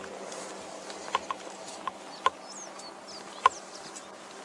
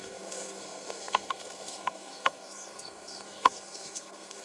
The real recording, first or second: first